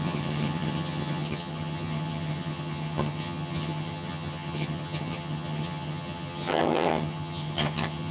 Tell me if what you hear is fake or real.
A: fake